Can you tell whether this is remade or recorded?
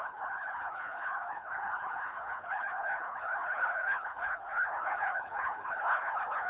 remade